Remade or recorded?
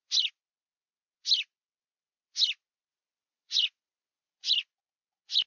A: recorded